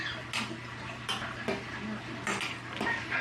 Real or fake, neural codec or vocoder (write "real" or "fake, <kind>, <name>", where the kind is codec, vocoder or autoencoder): real